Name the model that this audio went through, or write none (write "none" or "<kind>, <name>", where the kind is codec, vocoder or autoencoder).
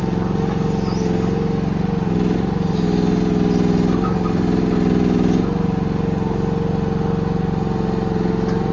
none